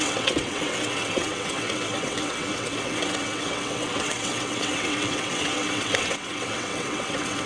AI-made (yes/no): yes